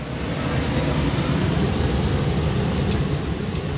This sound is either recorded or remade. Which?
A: recorded